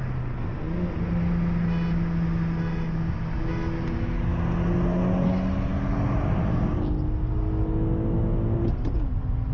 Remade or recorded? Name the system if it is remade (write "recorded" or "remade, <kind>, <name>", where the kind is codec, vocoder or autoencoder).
recorded